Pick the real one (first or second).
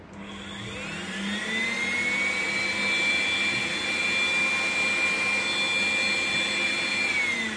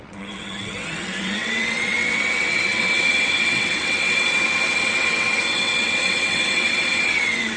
first